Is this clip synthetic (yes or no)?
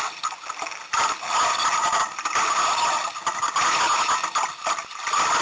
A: no